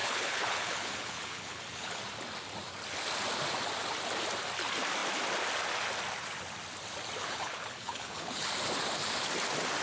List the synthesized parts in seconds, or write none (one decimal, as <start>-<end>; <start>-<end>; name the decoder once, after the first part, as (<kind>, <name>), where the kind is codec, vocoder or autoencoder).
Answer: 0.0-2.0 (codec, HILCodec); 7.2-8.5